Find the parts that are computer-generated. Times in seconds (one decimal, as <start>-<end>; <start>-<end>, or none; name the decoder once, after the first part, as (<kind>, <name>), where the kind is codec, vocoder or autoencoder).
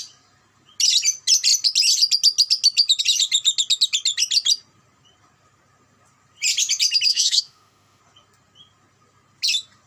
7.1-8.0 (autoencoder, DAC-VAE)